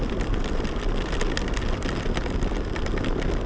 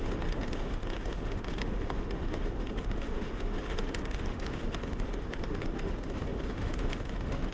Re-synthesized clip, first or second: second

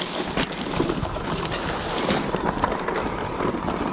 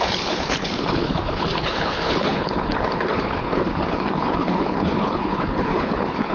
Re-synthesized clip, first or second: second